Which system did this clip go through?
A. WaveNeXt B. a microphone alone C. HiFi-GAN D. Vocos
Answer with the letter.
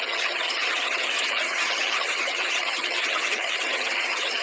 C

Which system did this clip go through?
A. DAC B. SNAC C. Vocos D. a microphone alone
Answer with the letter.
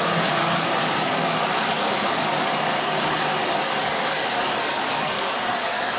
A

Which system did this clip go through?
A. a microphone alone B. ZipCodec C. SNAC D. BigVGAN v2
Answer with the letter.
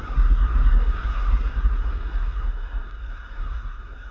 C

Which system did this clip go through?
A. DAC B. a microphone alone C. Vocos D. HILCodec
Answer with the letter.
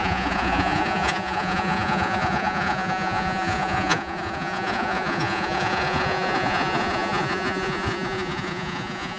C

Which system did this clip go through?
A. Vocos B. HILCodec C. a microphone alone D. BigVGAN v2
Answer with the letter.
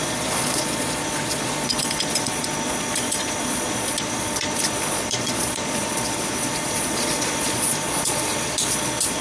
A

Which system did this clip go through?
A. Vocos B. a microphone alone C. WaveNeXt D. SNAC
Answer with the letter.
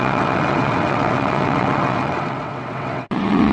C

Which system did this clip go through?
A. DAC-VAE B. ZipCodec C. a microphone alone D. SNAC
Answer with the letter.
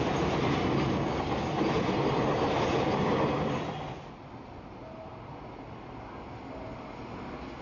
C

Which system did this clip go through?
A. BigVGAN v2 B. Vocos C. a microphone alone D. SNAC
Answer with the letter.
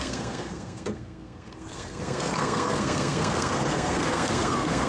D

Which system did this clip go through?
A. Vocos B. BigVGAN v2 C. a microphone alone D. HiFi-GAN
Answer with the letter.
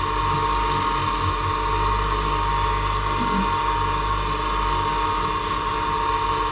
C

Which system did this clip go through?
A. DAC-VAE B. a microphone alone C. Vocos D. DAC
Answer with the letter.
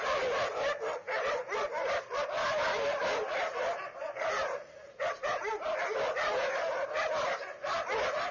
B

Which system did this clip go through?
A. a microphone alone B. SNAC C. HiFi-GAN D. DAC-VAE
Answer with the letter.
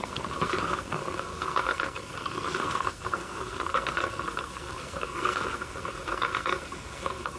B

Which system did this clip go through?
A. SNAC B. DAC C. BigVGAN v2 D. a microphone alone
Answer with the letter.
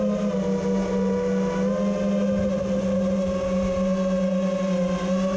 D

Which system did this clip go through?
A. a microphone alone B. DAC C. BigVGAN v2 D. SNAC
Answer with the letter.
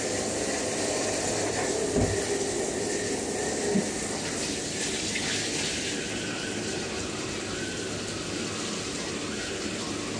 A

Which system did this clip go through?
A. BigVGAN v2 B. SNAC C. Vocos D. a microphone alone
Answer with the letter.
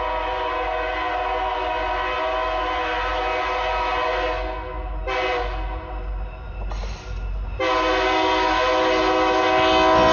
D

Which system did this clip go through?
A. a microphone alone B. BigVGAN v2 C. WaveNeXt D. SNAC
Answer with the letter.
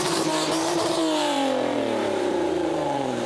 B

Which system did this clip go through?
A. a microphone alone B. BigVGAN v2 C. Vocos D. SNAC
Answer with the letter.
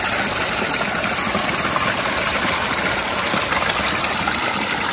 A